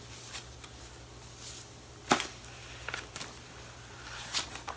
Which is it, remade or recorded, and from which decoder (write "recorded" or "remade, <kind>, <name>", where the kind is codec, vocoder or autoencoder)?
recorded